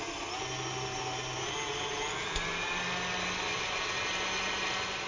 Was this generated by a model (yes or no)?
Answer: no